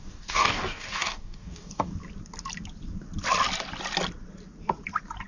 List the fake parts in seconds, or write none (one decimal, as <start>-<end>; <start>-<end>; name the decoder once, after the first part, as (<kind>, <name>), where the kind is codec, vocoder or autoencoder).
0.0-1.9 (codec, DAC)